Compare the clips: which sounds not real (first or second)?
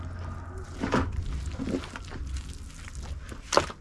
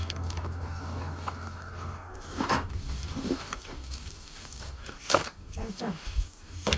second